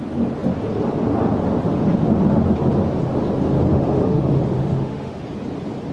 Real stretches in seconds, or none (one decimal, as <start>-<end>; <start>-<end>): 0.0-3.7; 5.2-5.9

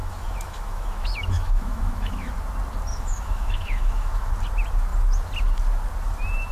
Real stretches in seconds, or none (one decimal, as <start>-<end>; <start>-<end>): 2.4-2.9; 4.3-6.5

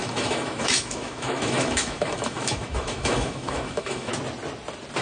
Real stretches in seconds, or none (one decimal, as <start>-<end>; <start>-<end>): 4.1-5.0

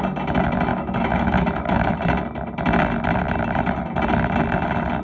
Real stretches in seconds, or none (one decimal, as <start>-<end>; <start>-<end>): 0.0-0.7; 1.9-5.0